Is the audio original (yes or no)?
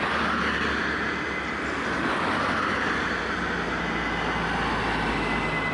yes